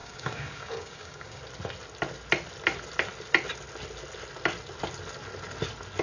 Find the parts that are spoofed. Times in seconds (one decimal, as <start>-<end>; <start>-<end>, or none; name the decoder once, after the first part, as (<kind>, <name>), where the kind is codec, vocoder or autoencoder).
0.0-1.4 (codec, DAC)